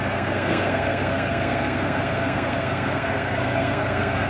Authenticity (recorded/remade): remade